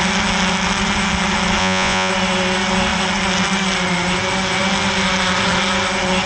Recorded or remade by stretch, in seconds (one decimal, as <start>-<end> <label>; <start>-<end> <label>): 0.0-1.6 recorded; 1.6-2.1 remade; 2.1-6.3 recorded